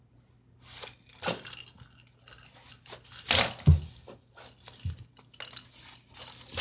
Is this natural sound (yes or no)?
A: yes